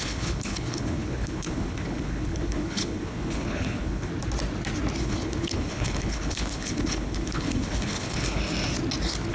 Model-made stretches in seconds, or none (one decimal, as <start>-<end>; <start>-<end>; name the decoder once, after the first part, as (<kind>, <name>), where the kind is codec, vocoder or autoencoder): 0.0-4.1 (codec, HILCodec); 5.0-8.4